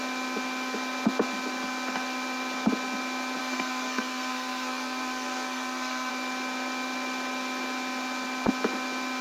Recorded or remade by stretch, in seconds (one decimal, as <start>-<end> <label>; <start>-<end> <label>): 0.0-3.4 recorded; 3.4-6.1 remade; 6.1-9.2 recorded